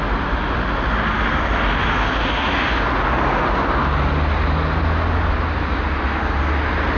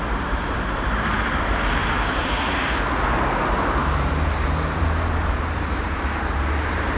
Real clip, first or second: first